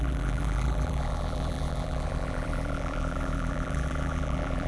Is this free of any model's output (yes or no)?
no